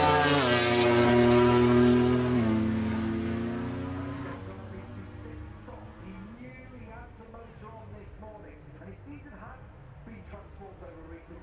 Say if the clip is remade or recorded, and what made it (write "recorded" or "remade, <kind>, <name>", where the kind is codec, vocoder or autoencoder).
recorded